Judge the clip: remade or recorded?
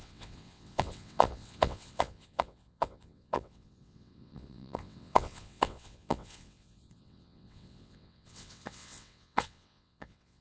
remade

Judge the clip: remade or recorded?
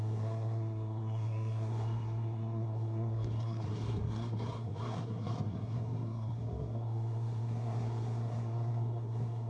remade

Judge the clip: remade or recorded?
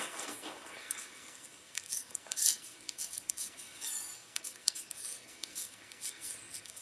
remade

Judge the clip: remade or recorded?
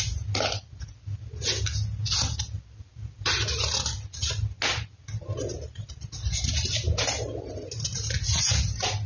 recorded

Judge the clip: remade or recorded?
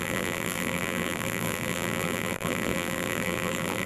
remade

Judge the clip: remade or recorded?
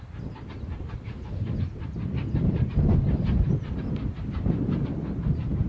recorded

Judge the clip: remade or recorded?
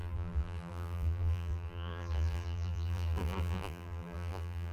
remade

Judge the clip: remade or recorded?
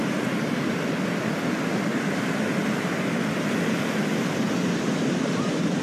recorded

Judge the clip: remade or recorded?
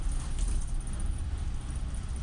recorded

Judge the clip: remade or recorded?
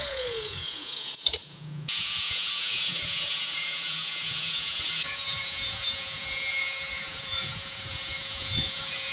remade